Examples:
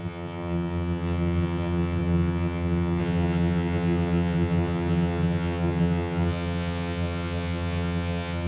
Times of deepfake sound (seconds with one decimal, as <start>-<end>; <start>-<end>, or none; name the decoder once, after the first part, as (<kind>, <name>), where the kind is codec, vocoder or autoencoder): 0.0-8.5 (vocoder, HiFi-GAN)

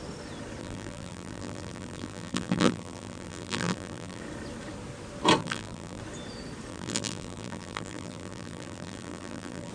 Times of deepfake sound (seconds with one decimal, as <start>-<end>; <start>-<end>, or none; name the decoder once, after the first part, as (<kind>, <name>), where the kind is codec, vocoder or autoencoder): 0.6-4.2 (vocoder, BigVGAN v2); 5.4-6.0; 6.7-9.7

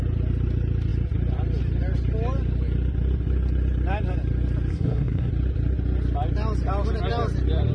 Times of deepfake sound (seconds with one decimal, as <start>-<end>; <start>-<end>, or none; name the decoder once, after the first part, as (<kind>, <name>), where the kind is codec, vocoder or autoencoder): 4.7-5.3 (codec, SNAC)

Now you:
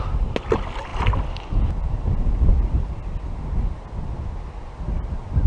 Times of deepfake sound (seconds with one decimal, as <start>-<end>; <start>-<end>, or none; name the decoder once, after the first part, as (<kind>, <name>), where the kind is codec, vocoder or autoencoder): none

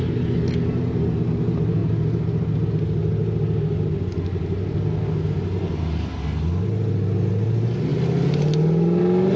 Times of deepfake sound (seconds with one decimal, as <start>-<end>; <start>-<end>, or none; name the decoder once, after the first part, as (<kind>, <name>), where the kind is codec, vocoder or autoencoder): none